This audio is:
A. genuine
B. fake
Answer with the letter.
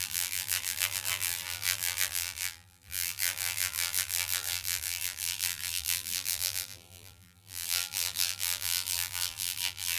B